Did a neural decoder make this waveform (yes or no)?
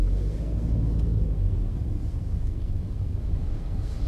yes